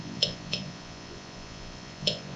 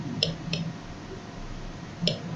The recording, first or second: second